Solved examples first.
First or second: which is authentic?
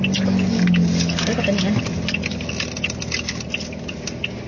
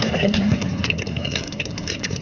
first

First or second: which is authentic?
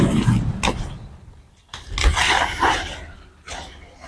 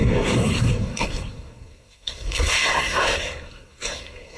first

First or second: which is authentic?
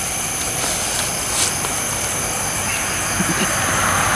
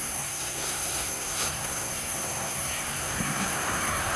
first